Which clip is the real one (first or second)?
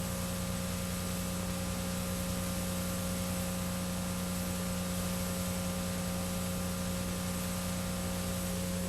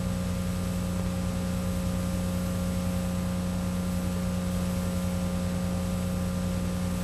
second